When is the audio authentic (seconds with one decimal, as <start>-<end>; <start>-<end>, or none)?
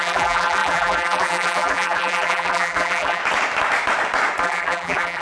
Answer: 3.2-4.4